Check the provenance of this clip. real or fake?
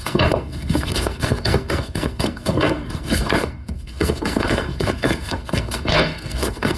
fake